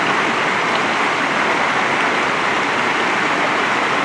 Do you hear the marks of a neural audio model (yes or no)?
no